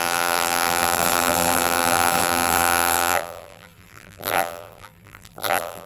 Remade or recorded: remade